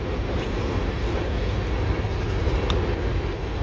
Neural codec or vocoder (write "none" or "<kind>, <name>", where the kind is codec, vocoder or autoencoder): none